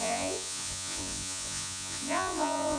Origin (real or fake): fake